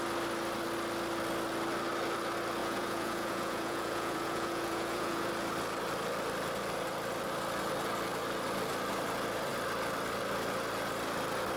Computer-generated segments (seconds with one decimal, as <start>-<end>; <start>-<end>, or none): 2.6-5.3